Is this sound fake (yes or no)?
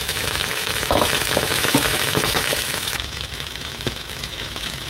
yes